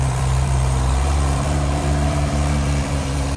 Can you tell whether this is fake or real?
fake